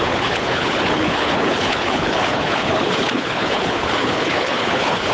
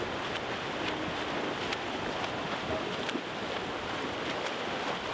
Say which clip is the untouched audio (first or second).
second